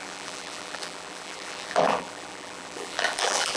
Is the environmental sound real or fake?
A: fake